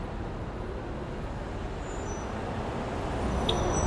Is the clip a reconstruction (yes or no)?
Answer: no